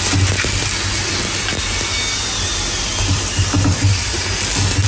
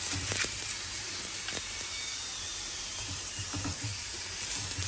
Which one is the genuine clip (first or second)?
first